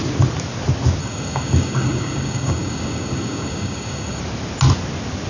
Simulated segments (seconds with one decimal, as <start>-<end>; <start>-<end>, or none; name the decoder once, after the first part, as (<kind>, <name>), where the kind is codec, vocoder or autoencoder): 1.0-4.2 (codec, DAC)